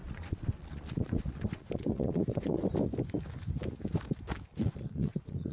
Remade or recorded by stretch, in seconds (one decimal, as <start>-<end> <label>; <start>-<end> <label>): 0.0-2.6 remade; 2.6-4.6 recorded; 4.6-5.5 remade